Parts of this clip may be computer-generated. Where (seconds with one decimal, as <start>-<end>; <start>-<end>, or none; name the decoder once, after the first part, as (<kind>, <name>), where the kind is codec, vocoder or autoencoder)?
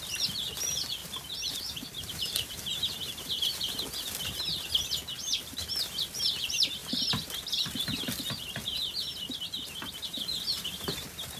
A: 1.0-3.8 (vocoder, BigVGAN v2)